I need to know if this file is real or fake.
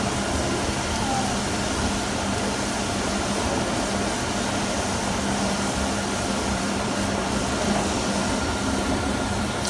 real